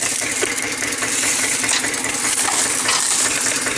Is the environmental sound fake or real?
real